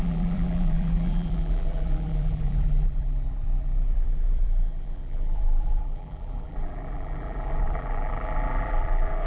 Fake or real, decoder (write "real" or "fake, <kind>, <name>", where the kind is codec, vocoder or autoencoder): fake, vocoder, BigVGAN v2